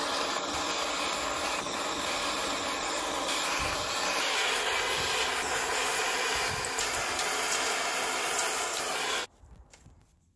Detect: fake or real real